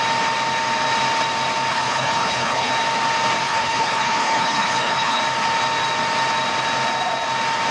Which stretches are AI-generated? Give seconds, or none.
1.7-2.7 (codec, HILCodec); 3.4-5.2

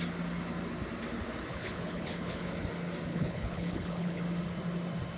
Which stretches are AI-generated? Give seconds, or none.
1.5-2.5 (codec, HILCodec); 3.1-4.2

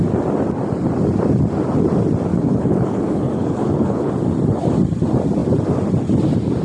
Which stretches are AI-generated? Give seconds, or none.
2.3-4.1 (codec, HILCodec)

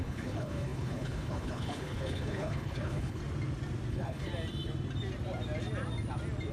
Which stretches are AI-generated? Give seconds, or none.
0.0-3.2 (codec, HILCodec); 3.9-4.3